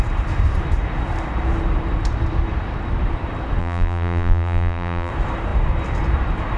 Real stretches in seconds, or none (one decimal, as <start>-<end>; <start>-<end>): 0.0-3.6; 5.1-6.6